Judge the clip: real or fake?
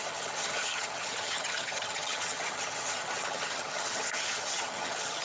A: fake